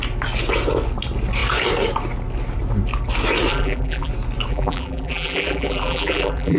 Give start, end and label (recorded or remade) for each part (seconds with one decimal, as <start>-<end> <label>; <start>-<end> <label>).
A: 0.0-3.5 recorded; 3.5-4.1 remade; 4.1-4.5 recorded; 4.5-6.6 remade